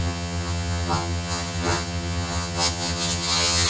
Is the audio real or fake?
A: fake